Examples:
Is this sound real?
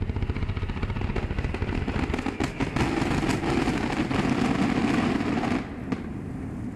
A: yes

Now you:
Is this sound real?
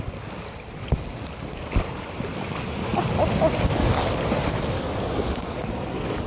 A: yes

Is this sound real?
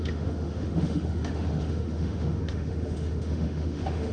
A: no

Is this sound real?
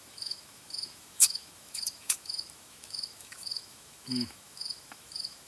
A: no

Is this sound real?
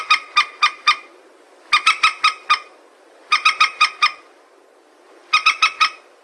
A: yes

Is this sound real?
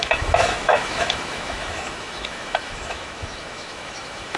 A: no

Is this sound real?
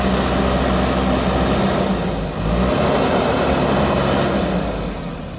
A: yes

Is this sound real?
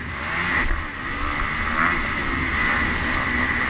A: yes